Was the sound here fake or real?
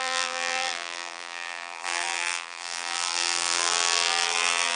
fake